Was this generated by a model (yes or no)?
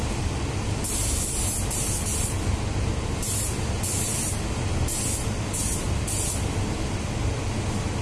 no